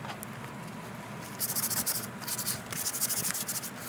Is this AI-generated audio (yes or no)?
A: no